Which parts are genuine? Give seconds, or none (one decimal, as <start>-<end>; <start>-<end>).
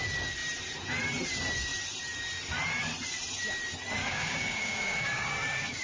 0.0-4.0